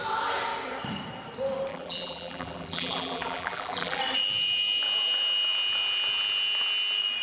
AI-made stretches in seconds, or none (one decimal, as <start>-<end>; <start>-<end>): 1.7-4.0